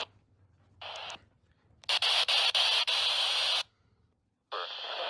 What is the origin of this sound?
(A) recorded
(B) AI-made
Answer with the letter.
B